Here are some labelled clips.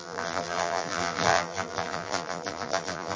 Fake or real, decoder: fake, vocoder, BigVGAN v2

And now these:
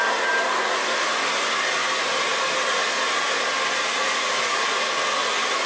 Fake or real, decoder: real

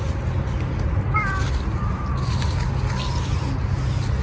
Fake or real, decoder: real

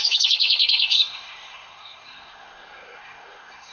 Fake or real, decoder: fake, codec, SNAC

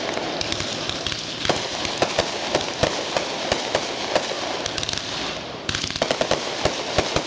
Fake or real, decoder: real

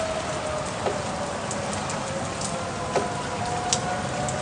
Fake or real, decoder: real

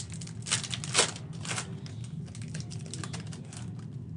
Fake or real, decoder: real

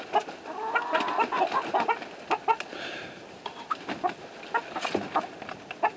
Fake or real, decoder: real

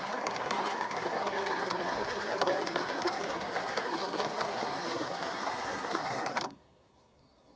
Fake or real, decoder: fake, codec, SNAC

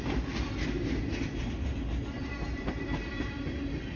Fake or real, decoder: real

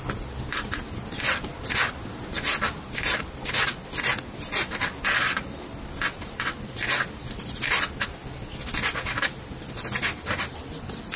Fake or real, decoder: real